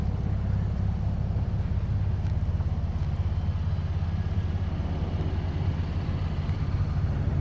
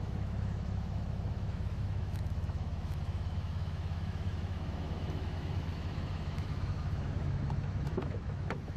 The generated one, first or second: second